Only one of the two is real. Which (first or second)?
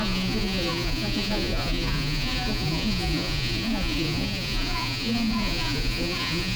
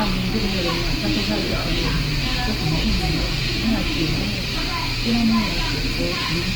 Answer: second